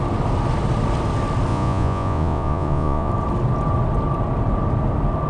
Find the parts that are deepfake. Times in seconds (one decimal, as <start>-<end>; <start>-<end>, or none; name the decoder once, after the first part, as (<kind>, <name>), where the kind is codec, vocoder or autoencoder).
1.5-3.1 (vocoder, Vocos)